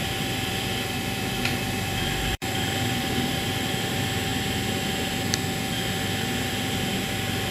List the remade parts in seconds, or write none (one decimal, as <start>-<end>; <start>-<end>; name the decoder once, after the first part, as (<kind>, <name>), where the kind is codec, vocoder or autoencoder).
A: 0.0-4.3 (vocoder, BigVGAN v2); 6.4-7.5